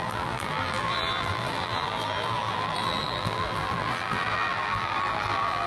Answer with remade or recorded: remade